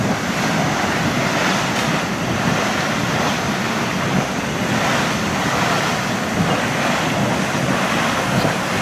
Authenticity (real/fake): real